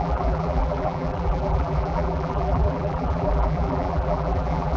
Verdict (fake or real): fake